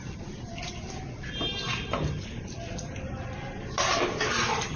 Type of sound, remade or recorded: recorded